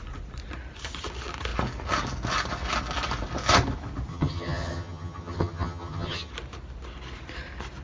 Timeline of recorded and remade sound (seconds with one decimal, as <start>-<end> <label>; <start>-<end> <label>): 0.0-4.1 recorded; 4.1-6.3 remade; 6.3-7.8 recorded